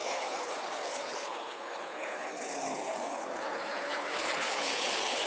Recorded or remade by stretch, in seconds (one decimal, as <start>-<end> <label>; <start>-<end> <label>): 0.0-5.3 remade